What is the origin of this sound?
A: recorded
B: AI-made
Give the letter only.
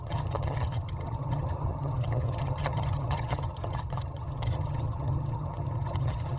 B